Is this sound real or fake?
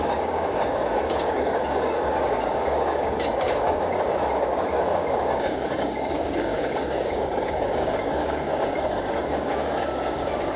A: fake